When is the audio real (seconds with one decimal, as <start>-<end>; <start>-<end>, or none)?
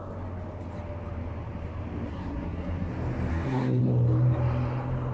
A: 0.0-2.1; 2.9-3.3; 3.8-5.1